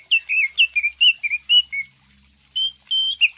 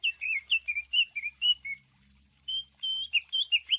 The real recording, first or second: first